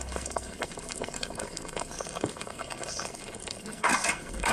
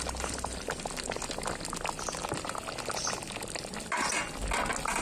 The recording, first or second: second